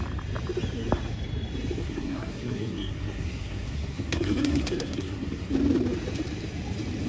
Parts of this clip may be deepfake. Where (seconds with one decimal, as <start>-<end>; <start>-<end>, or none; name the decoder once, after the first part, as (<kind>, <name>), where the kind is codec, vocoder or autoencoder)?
1.8-5.5 (codec, SNAC)